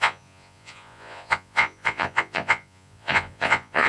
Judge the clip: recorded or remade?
remade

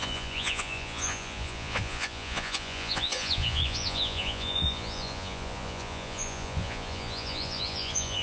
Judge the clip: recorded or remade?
remade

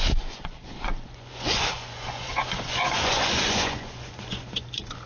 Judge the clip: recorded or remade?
remade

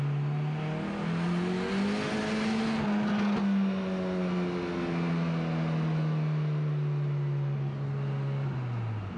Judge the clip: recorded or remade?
recorded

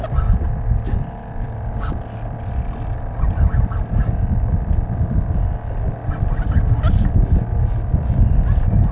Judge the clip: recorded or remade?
recorded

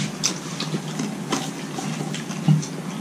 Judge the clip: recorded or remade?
recorded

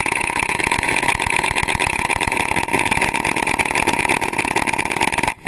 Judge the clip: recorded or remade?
remade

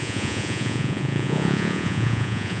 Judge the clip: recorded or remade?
remade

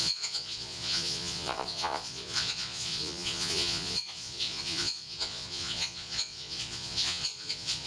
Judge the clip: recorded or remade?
remade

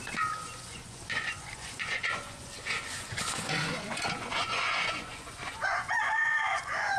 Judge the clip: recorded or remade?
remade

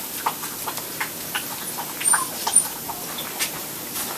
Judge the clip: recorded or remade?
recorded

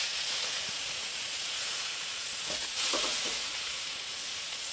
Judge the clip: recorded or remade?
remade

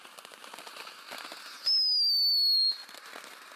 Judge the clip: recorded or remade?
recorded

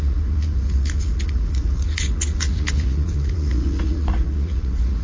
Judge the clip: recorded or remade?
remade